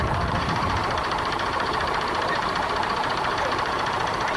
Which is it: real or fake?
fake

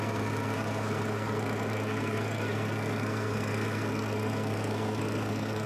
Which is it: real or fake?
fake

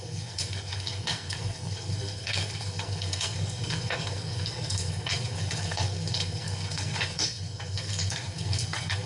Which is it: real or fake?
fake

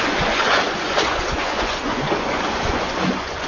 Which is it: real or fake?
fake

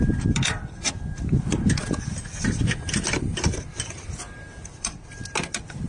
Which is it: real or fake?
fake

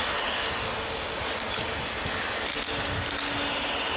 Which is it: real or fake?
real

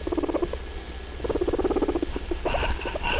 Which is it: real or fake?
real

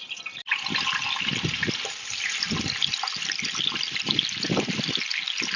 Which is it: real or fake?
real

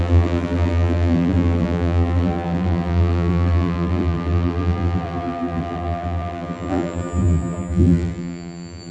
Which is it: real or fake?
fake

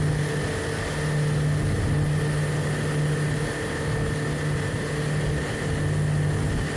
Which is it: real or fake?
real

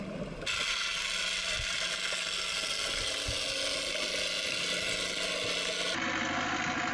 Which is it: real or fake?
real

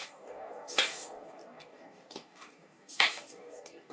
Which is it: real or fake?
fake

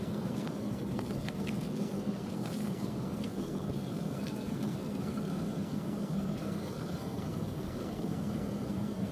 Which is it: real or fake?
fake